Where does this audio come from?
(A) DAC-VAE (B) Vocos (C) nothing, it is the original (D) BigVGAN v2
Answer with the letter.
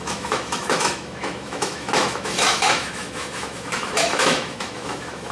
A